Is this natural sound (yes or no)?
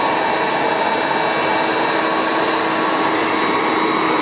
yes